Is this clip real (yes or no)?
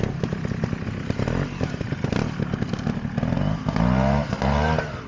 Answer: yes